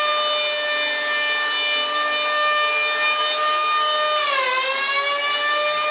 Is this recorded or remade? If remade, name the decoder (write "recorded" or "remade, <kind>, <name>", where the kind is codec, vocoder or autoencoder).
recorded